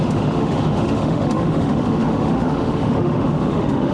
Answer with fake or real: fake